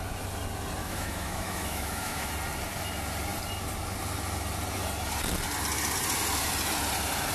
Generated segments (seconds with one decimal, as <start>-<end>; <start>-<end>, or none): 0.8-2.3